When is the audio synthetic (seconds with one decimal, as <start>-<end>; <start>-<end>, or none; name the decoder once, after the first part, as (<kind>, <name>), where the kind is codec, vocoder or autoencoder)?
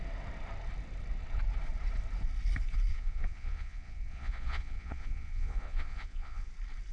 2.9-6.5 (vocoder, Vocos)